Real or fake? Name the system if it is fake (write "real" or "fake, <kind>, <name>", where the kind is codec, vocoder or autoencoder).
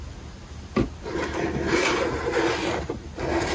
real